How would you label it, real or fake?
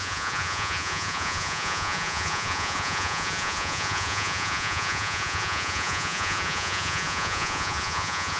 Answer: fake